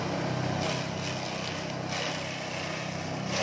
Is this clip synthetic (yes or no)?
no